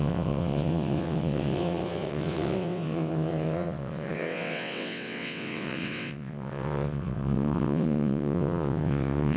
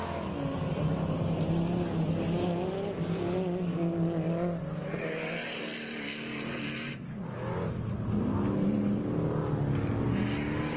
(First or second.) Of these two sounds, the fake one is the first